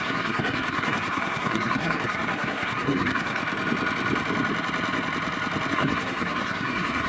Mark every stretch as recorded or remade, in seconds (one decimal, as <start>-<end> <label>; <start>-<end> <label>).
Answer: 0.0-3.4 remade; 3.4-5.7 recorded; 5.7-7.1 remade